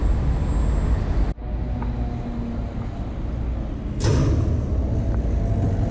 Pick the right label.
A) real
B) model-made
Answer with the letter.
A